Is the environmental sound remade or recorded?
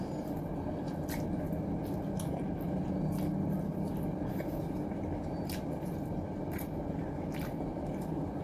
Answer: recorded